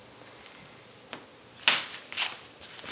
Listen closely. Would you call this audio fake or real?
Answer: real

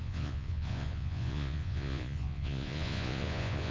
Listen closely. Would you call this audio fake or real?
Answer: fake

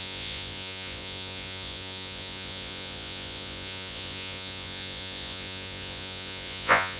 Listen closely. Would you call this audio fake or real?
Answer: fake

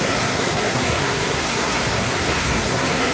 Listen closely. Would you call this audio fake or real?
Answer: fake